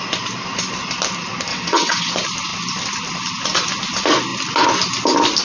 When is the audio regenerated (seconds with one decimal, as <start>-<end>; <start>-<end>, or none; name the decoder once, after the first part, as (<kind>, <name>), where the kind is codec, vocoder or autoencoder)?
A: 1.5-2.1 (vocoder, WaveNeXt)